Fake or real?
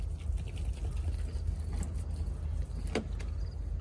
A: real